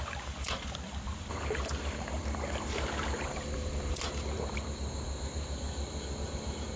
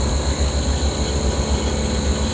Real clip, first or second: second